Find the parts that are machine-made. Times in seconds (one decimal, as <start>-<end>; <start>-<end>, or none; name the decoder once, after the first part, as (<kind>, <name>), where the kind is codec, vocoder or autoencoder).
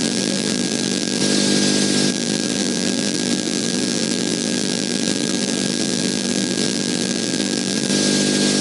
0.0-1.2 (vocoder, BigVGAN v2); 2.1-7.9